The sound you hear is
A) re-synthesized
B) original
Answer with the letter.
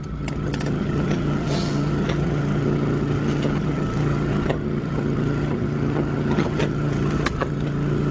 A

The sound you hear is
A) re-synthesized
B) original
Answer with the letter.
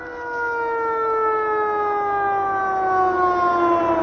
B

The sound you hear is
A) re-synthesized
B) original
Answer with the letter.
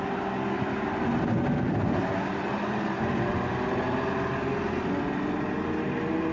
B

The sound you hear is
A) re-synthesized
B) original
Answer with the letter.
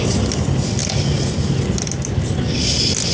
B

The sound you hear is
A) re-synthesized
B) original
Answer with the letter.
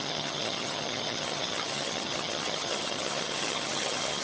A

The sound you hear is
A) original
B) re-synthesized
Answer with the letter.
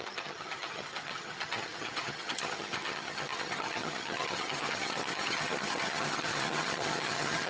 B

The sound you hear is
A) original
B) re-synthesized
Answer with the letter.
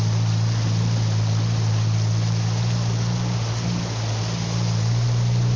A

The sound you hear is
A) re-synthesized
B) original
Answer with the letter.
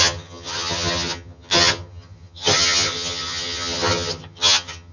A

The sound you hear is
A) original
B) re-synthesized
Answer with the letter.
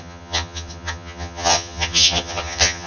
B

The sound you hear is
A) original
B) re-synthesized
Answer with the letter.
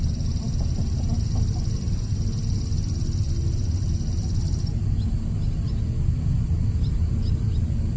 A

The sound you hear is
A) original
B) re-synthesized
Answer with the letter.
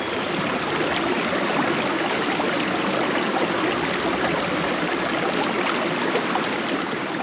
A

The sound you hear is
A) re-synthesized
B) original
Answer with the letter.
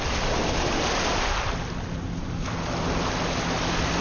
B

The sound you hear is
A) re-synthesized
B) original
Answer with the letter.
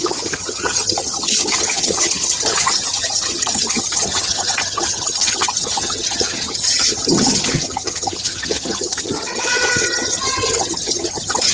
A